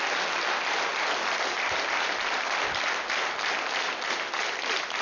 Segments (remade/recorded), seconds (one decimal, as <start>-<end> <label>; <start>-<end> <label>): 0.0-5.0 recorded